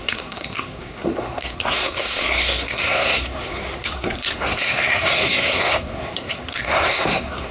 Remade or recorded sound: remade